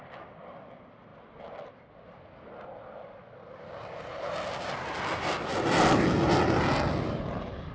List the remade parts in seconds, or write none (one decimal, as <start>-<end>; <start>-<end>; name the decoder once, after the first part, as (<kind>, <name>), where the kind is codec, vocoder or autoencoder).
none